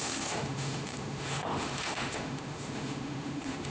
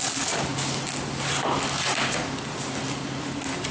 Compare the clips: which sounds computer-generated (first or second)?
first